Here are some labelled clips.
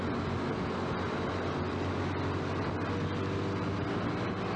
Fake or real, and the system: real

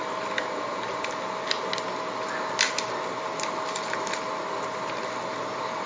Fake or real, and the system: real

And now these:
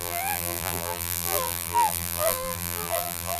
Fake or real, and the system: fake, vocoder, BigVGAN v2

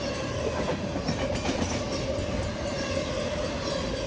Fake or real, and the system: real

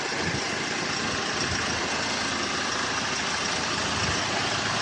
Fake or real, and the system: real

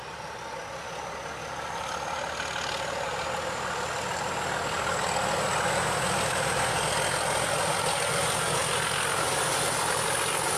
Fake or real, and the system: real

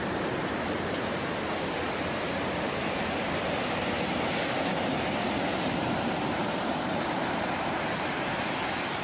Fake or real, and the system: fake, vocoder, BigVGAN v2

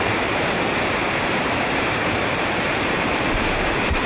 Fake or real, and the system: fake, vocoder, BigVGAN v2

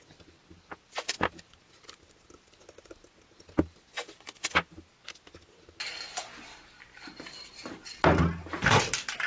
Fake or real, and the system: real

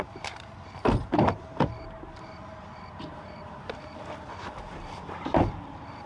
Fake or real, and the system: fake, vocoder, BigVGAN v2